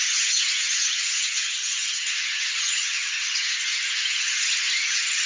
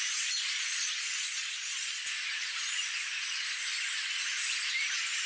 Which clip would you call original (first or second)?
second